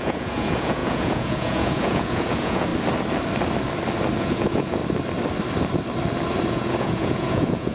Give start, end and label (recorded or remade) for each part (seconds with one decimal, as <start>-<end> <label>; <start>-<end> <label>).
0.0-2.7 remade; 2.7-4.2 recorded; 4.2-4.8 remade; 4.8-6.5 recorded; 6.5-7.7 remade